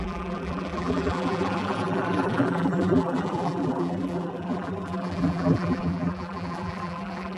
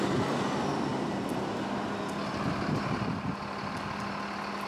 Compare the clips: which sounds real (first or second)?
second